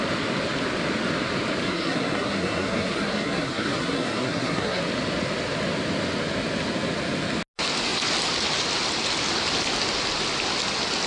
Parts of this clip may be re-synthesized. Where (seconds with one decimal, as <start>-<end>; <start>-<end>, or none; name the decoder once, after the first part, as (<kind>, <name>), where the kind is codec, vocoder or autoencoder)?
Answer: 1.6-4.8 (codec, SNAC)